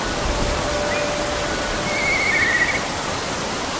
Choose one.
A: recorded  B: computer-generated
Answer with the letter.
A